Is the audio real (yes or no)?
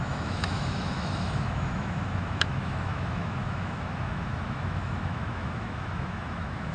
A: no